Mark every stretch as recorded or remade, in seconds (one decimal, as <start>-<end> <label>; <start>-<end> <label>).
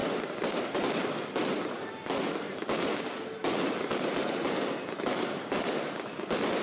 0.0-6.6 recorded